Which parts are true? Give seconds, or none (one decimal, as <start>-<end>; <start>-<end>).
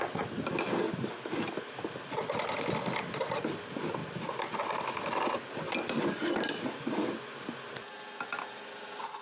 0.0-9.2